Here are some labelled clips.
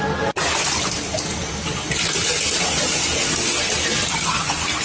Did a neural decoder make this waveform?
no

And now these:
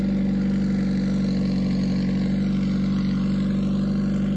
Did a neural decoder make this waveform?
no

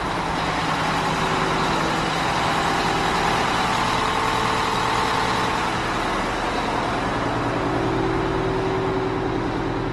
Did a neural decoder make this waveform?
no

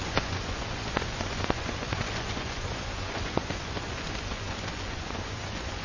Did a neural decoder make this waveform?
yes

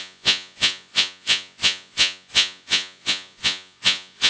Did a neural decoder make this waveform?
yes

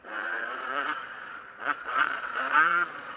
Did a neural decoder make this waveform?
yes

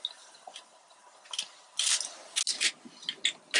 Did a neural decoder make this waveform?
no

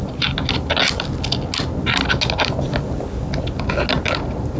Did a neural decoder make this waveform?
no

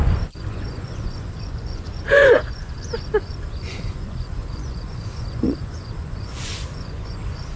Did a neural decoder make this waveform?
yes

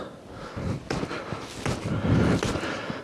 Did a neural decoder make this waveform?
no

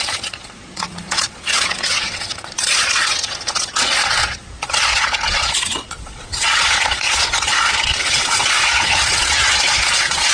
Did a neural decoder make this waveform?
yes